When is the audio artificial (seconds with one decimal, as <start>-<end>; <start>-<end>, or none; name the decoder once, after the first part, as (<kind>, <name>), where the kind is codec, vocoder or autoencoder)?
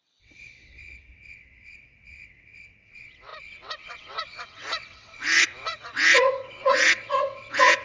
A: 0.0-7.8 (vocoder, WaveNeXt)